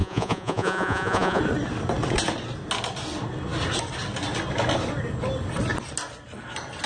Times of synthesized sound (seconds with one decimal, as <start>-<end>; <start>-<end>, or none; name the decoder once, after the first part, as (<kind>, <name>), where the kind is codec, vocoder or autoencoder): 0.0-1.4 (vocoder, Vocos)